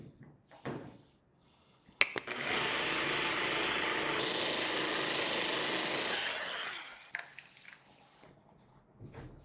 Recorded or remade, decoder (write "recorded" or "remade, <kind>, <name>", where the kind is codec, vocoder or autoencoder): recorded